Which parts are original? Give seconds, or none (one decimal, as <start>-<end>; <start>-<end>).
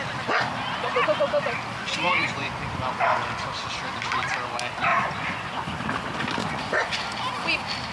0.0-1.8; 2.6-4.9; 5.8-6.4; 7.0-7.9